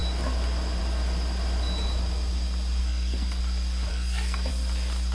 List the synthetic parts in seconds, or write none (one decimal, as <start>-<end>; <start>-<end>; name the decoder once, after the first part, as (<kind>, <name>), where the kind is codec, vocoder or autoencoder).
2.8-3.4 (codec, SNAC); 3.9-4.5